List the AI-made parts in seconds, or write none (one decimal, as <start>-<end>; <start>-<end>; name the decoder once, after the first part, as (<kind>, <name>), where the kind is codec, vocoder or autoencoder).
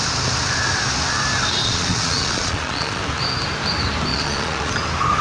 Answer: 1.6-3.0 (vocoder, Vocos); 4.1-4.7